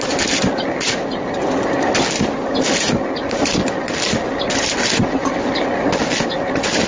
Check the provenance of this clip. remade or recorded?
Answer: recorded